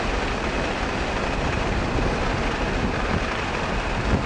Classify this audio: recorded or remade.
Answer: recorded